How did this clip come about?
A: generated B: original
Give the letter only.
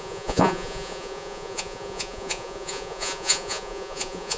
A